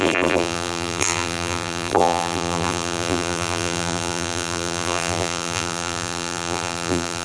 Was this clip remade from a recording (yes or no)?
yes